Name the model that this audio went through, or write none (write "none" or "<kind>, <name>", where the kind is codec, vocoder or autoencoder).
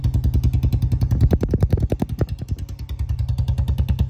none